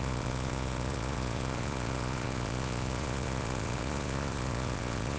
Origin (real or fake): fake